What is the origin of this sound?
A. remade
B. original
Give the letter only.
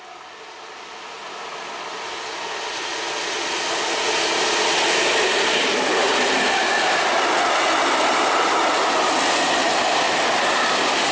B